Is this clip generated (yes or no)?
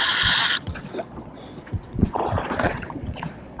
yes